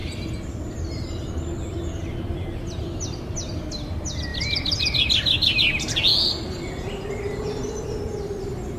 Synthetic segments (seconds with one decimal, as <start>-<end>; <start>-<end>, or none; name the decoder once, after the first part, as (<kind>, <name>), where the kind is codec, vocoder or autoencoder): 0.0-0.9 (vocoder, BigVGAN v2); 6.1-7.3